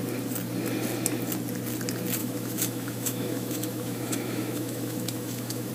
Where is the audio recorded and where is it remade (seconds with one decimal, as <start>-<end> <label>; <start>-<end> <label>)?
0.0-2.2 recorded; 2.2-5.7 remade